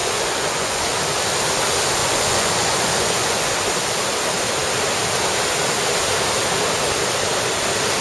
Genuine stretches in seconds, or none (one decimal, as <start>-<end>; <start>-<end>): 0.9-2.0; 3.5-8.0